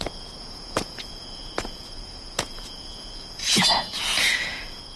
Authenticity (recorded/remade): remade